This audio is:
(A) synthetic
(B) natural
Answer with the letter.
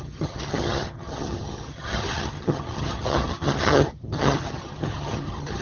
A